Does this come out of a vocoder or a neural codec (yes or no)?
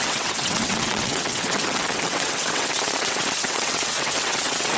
yes